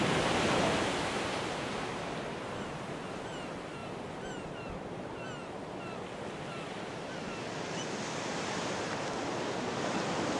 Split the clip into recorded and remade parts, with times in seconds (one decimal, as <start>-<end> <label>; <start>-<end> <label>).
0.0-10.4 recorded

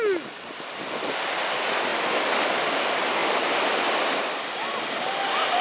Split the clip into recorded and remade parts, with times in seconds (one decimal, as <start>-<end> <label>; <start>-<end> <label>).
0.0-5.6 recorded

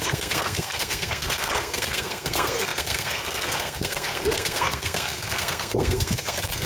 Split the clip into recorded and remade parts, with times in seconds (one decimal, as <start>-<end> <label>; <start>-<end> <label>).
0.0-6.7 remade

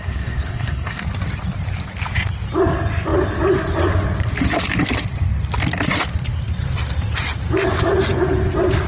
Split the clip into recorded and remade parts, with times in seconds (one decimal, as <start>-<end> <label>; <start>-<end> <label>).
0.0-1.0 remade; 1.0-8.9 recorded